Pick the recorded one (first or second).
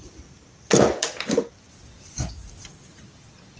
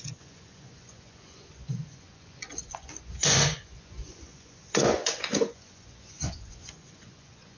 first